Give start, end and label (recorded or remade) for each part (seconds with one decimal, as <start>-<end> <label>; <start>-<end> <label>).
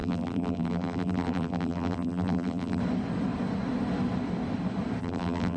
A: 0.0-2.8 remade; 2.8-5.0 recorded; 5.0-5.6 remade